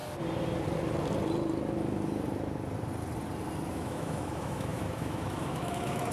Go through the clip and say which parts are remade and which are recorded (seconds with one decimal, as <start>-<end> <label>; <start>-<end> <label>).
0.0-3.7 recorded; 3.7-6.1 remade